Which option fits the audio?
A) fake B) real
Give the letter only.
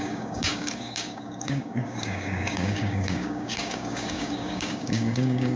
A